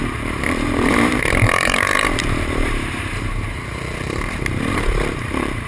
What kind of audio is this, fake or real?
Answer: fake